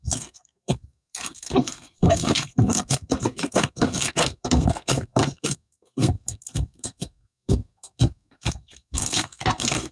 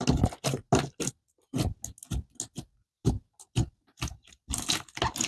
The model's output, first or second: first